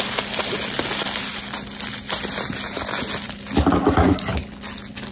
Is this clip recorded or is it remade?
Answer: recorded